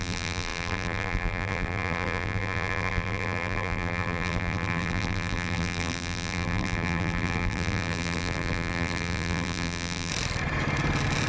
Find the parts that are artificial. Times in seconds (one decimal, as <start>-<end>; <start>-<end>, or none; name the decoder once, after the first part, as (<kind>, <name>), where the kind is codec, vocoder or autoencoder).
0.0-10.1 (vocoder, BigVGAN v2)